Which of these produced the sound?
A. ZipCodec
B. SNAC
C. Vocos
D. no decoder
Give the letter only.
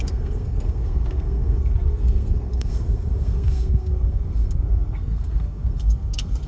B